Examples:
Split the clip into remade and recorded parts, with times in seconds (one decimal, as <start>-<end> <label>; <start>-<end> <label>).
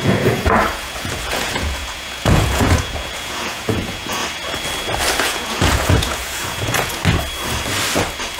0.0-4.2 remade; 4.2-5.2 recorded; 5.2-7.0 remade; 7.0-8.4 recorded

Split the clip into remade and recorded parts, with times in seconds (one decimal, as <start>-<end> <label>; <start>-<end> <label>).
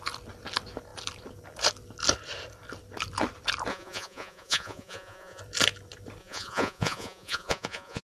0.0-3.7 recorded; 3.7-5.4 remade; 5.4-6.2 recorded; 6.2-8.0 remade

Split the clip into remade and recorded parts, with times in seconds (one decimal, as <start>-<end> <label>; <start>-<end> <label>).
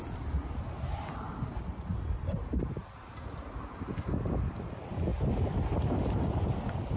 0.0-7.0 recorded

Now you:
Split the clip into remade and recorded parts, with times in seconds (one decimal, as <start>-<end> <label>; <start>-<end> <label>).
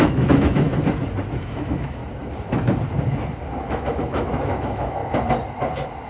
0.0-0.7 remade; 0.7-1.4 recorded; 1.4-2.0 remade; 2.0-3.7 recorded; 3.7-5.0 remade; 5.0-6.1 recorded